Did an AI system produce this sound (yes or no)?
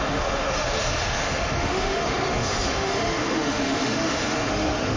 yes